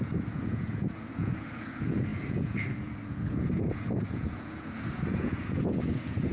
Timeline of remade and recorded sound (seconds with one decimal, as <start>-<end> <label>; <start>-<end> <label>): 0.0-6.3 remade